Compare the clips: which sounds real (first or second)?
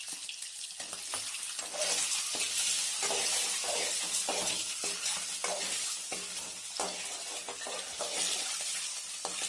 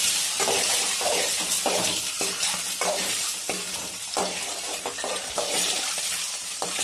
first